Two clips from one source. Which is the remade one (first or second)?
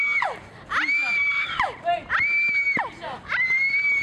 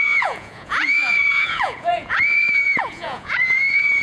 second